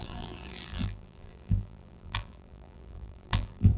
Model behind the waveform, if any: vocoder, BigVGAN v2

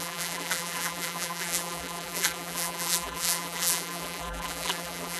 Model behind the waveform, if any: vocoder, BigVGAN v2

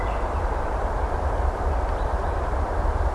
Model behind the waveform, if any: vocoder, BigVGAN v2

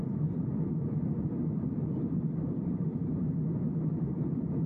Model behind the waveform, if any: none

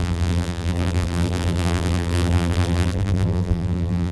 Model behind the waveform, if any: vocoder, BigVGAN v2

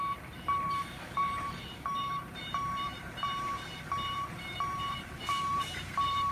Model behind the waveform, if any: vocoder, BigVGAN v2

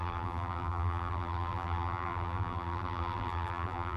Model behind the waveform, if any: vocoder, BigVGAN v2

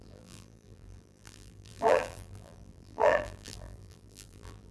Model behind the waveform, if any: vocoder, BigVGAN v2